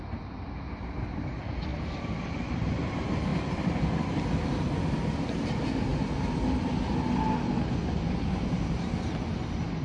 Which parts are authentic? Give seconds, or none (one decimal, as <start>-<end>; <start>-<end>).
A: 0.0-9.8